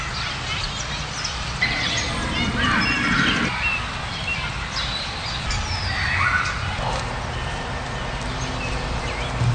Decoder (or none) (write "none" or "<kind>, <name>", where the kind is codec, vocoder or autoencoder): none